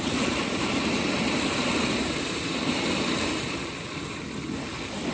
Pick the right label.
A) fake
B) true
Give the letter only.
B